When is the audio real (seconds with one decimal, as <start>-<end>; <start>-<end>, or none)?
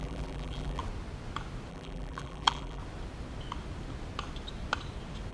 0.8-1.7; 2.8-5.3